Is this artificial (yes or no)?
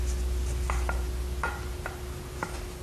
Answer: no